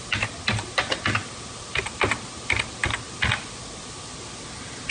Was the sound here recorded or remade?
recorded